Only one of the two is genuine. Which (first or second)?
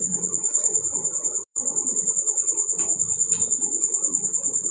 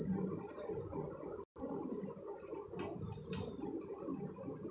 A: second